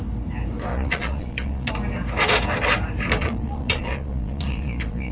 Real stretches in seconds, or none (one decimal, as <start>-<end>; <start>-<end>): 0.0-0.7; 1.7-3.2